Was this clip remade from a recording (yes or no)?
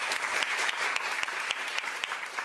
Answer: yes